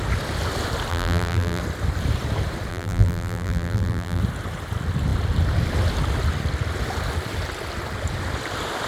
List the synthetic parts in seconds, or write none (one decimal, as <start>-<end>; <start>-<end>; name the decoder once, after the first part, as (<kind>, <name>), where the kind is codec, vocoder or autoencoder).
0.9-1.6 (vocoder, BigVGAN v2); 2.7-4.2